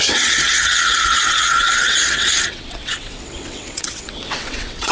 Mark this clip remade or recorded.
remade